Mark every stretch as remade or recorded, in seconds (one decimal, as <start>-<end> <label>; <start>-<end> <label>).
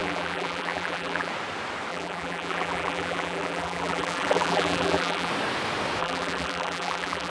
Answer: 0.0-1.3 remade; 1.3-1.9 recorded; 1.9-5.3 remade; 5.3-6.0 recorded; 6.0-7.3 remade